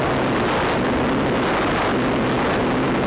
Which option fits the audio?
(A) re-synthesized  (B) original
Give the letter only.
B